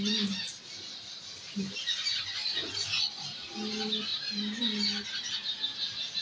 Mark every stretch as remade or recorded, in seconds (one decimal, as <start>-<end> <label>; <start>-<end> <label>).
0.0-4.1 recorded; 4.1-4.6 remade; 4.6-6.2 recorded